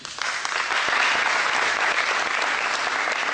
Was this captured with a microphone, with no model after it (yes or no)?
yes